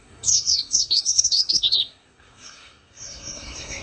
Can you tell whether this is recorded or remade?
remade